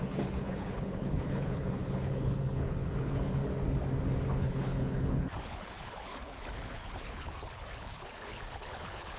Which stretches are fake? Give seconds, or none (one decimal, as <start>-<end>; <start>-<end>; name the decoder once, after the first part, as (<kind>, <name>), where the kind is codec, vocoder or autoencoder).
0.0-3.4 (codec, HILCodec); 4.4-9.2